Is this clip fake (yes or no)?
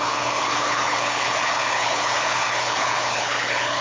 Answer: yes